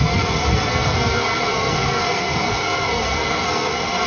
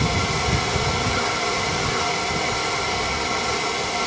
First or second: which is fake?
first